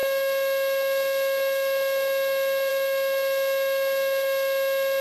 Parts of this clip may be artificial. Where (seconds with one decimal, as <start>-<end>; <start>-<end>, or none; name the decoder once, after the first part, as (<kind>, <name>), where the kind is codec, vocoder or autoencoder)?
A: none